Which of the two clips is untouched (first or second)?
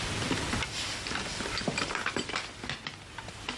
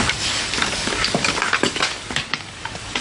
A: first